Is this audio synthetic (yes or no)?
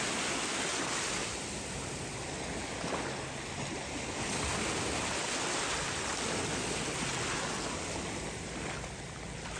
no